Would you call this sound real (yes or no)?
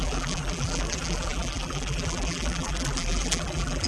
no